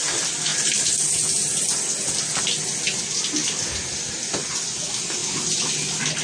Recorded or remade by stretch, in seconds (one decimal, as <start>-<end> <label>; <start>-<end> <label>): 0.0-6.2 recorded